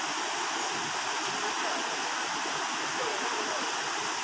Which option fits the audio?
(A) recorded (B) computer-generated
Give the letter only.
A